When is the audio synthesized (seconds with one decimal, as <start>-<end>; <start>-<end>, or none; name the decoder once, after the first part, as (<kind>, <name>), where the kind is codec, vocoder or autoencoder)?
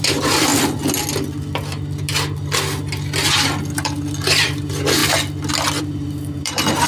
0.0-0.5 (vocoder, BigVGAN v2); 4.2-5.0; 5.8-6.9